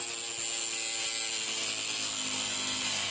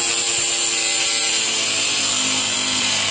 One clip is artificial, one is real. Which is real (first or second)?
first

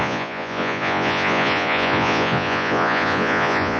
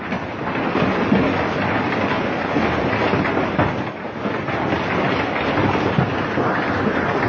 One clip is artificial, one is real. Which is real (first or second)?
second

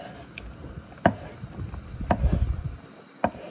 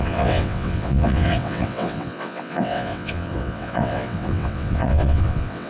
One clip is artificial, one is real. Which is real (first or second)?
first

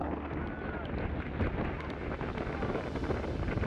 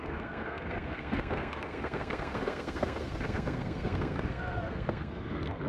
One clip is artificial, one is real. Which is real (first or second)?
first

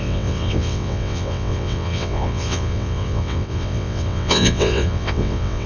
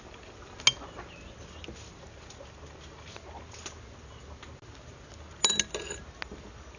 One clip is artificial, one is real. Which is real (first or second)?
second